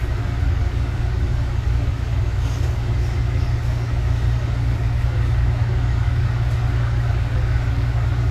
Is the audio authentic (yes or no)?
no